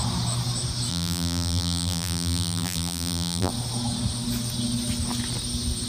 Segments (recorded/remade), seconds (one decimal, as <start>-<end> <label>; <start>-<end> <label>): 0.0-0.9 recorded; 0.9-3.5 remade; 3.5-5.9 recorded